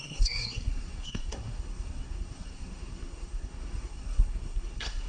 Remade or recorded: remade